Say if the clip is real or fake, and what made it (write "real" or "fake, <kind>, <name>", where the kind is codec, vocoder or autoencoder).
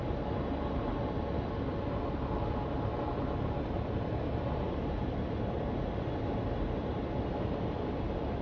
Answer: real